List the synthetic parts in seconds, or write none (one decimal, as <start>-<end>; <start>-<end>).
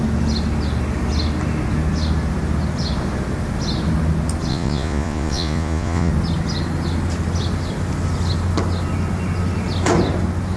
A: 4.5-6.1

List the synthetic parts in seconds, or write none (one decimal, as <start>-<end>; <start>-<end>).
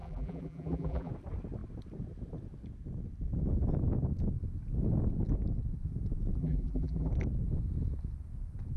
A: 0.0-1.1; 6.4-7.1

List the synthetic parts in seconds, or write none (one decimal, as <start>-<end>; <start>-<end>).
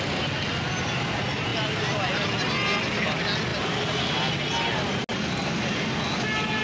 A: 1.5-2.1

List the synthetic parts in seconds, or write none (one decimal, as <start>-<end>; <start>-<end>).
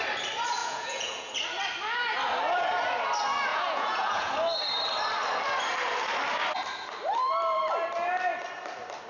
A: 0.6-1.3; 3.5-4.3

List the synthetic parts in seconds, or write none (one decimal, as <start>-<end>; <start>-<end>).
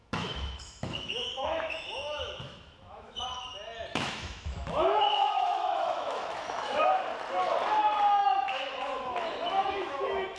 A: 0.0-3.2; 3.9-6.9; 8.2-10.4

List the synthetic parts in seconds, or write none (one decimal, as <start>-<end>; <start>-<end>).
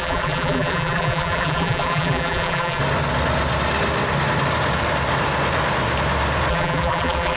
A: 0.0-2.8; 6.5-7.4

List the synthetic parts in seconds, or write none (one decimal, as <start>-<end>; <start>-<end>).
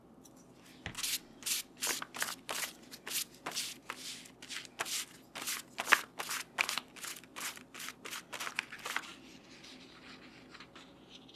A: 1.4-3.1; 7.3-8.5; 9.1-10.0